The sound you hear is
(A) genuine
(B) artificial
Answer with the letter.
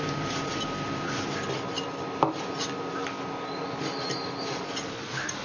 A